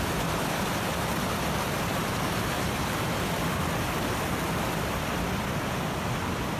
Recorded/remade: recorded